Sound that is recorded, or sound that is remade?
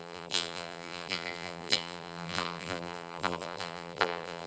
remade